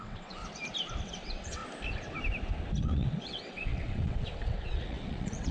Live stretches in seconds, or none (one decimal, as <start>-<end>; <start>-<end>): 0.4-1.0; 1.6-2.8